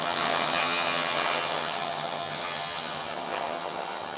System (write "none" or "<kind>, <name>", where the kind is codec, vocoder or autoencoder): vocoder, HiFi-GAN